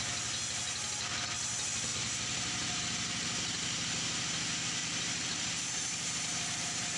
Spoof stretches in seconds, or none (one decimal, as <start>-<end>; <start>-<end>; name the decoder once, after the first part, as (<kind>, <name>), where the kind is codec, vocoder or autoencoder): 1.9-2.8 (vocoder, BigVGAN v2); 4.8-7.0